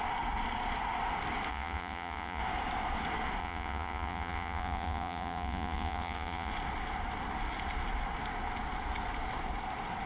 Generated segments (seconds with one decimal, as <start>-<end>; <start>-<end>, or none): 1.5-2.4; 3.4-6.5